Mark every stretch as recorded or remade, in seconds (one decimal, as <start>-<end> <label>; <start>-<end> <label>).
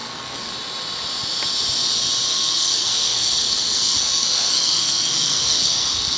0.0-0.5 remade; 0.5-2.3 recorded; 2.3-6.2 remade